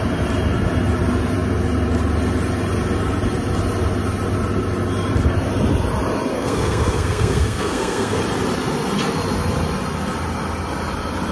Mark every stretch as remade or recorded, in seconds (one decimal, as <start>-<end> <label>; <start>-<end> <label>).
0.0-6.3 recorded; 6.3-8.2 remade; 8.2-11.3 recorded